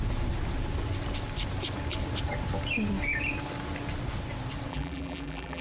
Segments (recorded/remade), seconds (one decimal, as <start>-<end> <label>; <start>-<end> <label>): 0.0-4.7 recorded; 4.7-5.6 remade